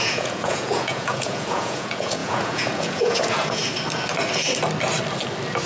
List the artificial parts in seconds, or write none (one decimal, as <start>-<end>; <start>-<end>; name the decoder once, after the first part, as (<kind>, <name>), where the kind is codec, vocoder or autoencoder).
0.0-3.6 (vocoder, Vocos)